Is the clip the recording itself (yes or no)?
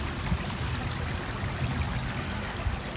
yes